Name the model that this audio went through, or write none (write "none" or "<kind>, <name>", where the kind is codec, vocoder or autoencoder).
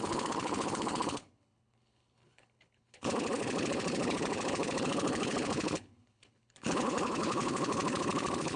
codec, HILCodec